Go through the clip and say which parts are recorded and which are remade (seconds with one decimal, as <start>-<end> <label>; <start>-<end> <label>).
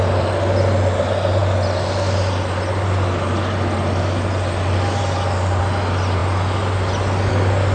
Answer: 0.0-7.7 recorded